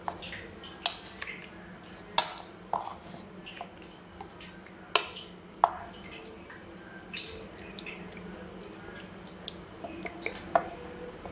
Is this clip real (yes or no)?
yes